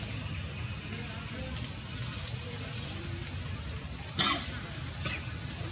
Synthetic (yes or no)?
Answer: no